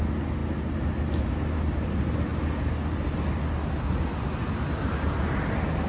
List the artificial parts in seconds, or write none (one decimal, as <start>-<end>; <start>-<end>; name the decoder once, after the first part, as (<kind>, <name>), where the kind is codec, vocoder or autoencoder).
none